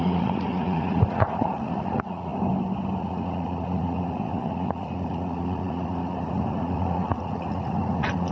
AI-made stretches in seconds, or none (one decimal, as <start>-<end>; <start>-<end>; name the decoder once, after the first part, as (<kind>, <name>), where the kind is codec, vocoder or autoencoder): 0.0-2.3 (vocoder, Vocos); 3.0-8.3